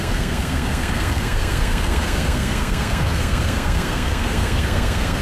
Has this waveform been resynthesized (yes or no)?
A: yes